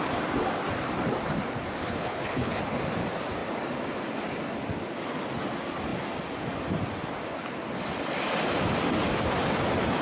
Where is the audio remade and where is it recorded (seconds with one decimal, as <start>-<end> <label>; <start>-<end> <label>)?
0.0-1.8 recorded; 1.8-2.6 remade; 2.6-10.0 recorded